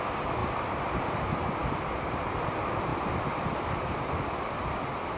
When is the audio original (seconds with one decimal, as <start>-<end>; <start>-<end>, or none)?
0.0-5.2